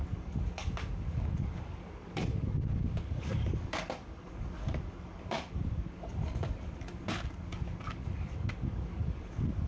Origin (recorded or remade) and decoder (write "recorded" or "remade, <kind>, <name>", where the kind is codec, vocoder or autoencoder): remade, codec, DAC